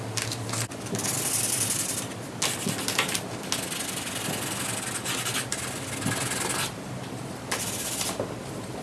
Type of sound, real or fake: real